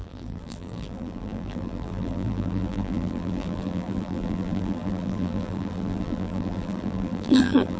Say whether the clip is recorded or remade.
remade